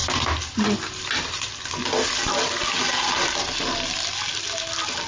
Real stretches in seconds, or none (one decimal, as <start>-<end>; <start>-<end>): 0.0-3.1